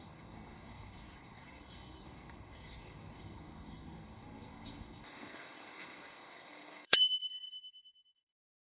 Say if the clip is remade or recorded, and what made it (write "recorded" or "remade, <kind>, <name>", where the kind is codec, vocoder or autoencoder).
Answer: remade, codec, SNAC